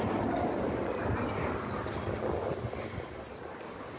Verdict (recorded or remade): recorded